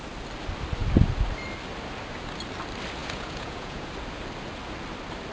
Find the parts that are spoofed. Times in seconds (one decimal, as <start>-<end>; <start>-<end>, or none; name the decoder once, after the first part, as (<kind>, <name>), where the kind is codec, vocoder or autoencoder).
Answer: 3.0-3.9 (vocoder, Vocos)